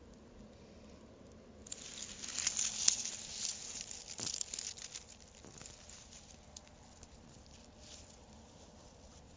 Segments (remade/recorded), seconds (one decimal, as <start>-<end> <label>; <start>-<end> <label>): 0.0-9.4 recorded